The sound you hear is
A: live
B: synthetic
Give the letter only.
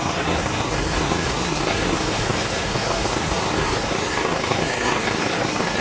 B